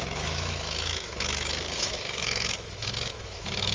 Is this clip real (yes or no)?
no